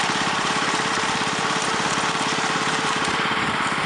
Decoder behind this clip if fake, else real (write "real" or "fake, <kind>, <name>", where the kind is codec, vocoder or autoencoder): fake, vocoder, BigVGAN v2